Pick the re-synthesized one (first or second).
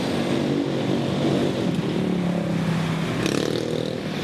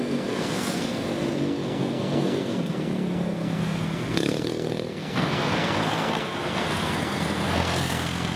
second